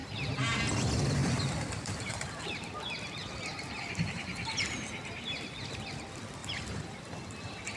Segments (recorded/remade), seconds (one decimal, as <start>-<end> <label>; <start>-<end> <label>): 0.0-0.6 remade; 0.6-1.2 recorded; 1.2-2.8 remade; 2.8-3.5 recorded; 3.5-4.6 remade; 4.6-6.4 recorded; 6.4-7.0 remade; 7.0-7.8 recorded